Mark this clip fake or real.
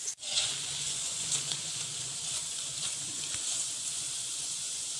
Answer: fake